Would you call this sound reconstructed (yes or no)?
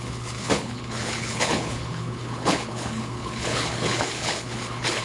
yes